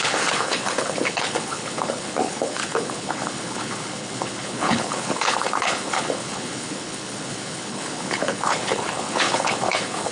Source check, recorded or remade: remade